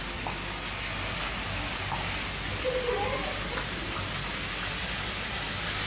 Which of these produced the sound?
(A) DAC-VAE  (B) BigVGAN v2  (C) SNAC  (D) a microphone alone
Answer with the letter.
D